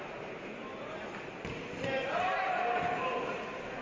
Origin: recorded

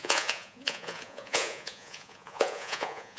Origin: remade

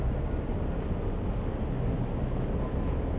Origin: recorded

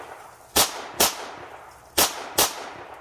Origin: recorded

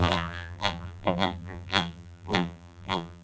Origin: remade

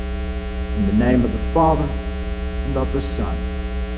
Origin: remade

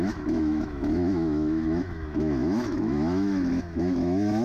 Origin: remade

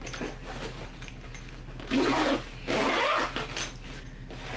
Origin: recorded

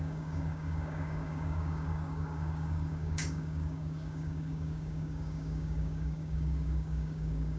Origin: remade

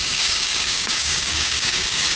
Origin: remade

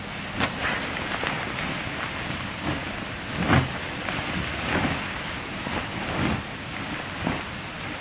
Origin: recorded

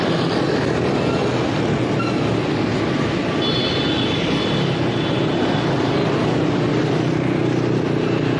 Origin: recorded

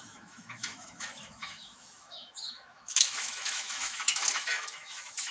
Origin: remade